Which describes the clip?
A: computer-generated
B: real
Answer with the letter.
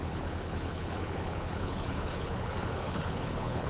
A